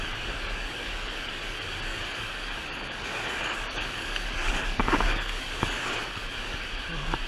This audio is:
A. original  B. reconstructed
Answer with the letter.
B